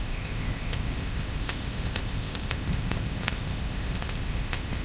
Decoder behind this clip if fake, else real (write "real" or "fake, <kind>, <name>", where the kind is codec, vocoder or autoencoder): fake, codec, ZipCodec